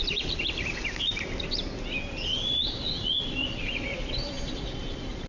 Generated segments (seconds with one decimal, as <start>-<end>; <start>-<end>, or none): 2.3-5.3